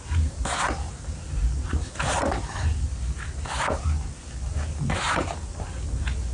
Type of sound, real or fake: real